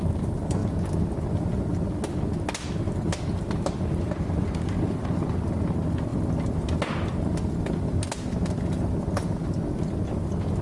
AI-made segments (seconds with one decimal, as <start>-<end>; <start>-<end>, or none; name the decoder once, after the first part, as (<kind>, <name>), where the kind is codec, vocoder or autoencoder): none